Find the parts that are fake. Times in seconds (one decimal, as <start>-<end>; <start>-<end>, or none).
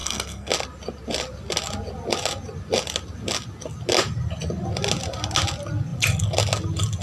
0.0-0.5